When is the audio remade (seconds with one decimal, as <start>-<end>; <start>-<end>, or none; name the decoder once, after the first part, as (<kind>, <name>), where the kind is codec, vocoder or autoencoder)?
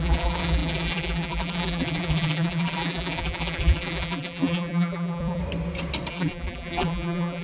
0.0-5.4 (vocoder, BigVGAN v2); 6.1-7.4